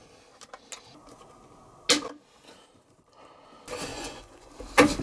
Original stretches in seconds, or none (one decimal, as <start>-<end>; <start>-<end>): 0.0-3.9; 4.5-5.0